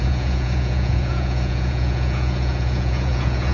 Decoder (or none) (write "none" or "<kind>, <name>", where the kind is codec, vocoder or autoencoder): vocoder, Vocos